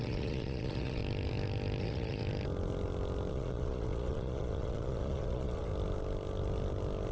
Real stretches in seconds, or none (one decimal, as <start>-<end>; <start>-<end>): 1.0-1.8; 2.2-3.3; 5.7-7.1